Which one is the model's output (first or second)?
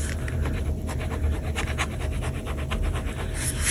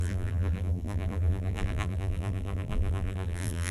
second